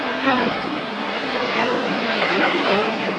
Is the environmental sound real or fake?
fake